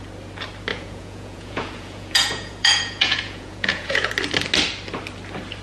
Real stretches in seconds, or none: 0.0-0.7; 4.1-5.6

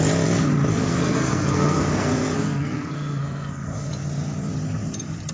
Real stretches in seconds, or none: 0.0-0.7; 3.9-5.3

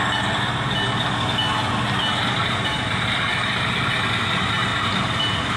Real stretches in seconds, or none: 0.0-5.6

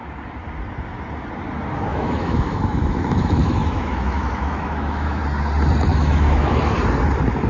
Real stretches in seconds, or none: 0.0-1.9; 5.2-5.9; 6.6-7.5

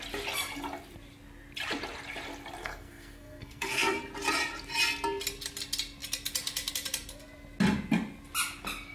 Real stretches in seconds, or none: 0.0-2.6; 4.0-8.9

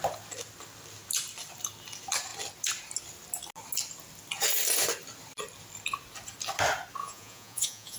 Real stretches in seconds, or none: 0.0-7.0